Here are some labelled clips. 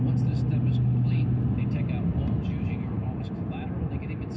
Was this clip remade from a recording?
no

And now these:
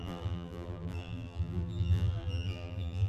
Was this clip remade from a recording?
yes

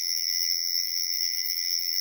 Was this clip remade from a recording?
yes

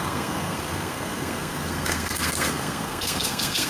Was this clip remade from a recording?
yes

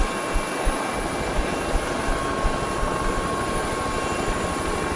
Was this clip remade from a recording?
no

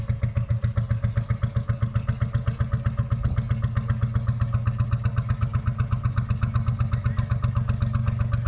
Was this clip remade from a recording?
no